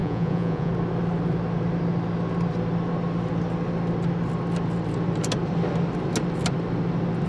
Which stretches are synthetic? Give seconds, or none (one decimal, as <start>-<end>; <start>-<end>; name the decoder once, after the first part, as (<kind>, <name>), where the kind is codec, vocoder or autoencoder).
0.0-0.7 (vocoder, Vocos)